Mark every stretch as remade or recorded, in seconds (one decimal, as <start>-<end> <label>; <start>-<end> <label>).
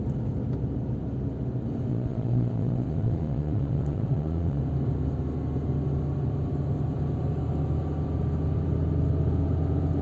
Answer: 0.0-1.9 recorded; 1.9-4.6 remade; 4.6-10.0 recorded